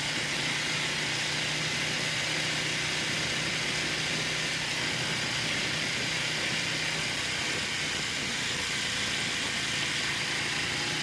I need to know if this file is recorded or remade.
recorded